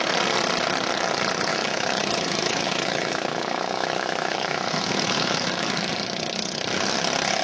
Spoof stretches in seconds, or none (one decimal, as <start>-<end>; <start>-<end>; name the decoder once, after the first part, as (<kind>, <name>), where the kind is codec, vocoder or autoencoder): 1.5-5.9 (autoencoder, DAC-VAE)